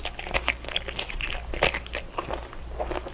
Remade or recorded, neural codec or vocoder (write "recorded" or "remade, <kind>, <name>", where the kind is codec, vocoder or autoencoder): recorded